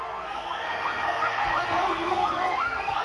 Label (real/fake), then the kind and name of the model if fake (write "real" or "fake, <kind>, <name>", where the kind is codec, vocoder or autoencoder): fake, codec, SNAC